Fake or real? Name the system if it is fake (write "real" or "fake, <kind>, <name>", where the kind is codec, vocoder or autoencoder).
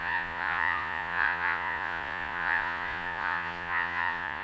fake, vocoder, Vocos